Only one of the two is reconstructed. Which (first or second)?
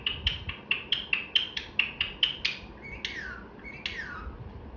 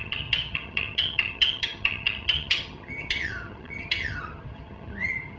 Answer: second